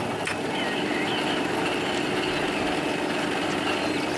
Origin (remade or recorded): recorded